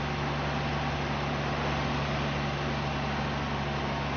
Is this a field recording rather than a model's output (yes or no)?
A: yes